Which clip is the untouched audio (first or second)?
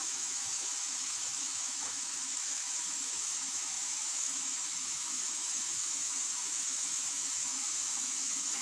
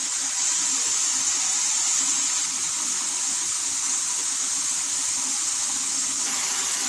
second